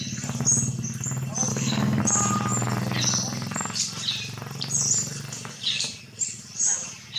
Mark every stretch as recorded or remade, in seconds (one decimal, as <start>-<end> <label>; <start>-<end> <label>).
0.0-1.5 recorded; 1.5-2.0 remade; 2.0-7.2 recorded